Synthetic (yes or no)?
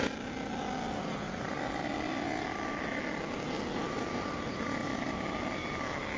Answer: no